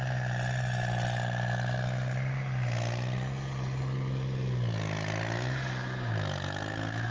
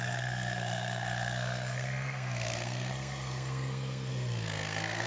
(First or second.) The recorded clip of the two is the first